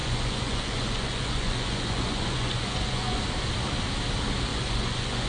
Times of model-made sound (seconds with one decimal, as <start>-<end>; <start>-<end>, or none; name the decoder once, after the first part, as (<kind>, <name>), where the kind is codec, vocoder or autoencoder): 0.0-3.2 (vocoder, Vocos); 4.5-5.3